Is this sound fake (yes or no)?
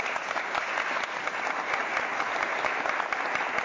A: no